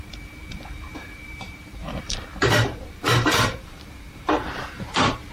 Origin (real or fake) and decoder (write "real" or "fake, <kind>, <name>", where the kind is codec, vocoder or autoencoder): fake, vocoder, BigVGAN v2